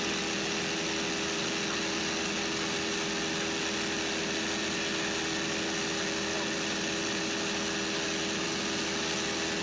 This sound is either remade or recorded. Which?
recorded